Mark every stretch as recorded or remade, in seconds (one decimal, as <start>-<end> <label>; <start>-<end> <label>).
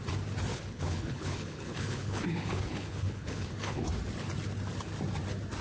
0.0-0.5 recorded; 0.5-3.9 remade; 3.9-5.6 recorded